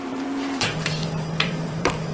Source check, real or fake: fake